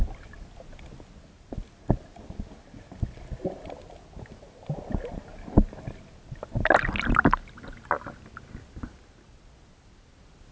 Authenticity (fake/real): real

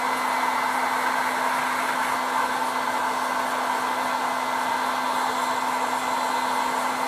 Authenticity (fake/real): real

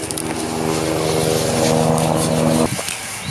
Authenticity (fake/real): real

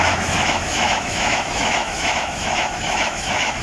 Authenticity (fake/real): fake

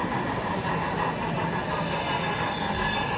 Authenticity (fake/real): real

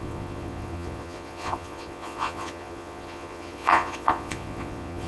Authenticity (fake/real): fake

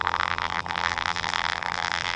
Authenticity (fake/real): fake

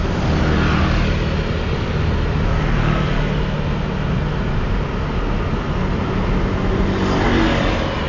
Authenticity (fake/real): real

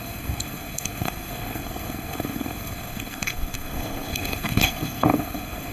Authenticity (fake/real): fake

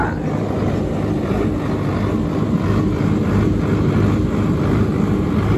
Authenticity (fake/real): real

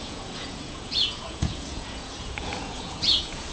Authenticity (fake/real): fake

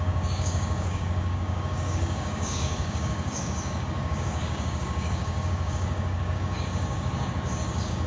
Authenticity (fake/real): fake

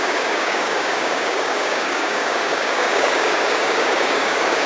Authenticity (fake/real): fake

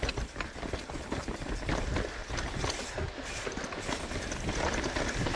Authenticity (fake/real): real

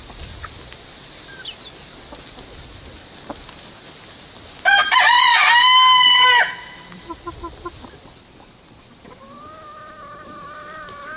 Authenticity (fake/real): real